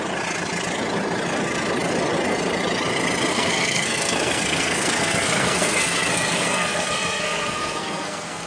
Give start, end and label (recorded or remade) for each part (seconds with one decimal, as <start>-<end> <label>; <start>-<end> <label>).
0.0-3.3 recorded; 3.3-8.5 remade